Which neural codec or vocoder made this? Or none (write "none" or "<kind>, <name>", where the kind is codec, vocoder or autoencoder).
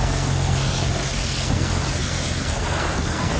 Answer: codec, SNAC